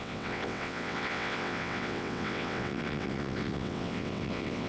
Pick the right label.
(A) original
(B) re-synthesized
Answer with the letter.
B